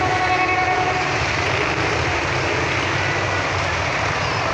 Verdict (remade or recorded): recorded